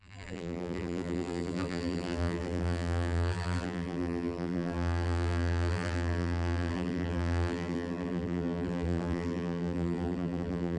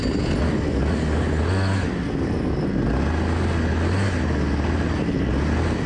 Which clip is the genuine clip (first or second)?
second